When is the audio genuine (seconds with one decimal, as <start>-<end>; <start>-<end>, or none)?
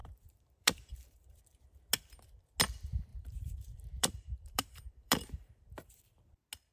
1.4-3.1; 6.0-6.7